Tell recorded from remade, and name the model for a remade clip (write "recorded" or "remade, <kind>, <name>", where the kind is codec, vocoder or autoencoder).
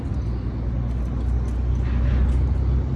recorded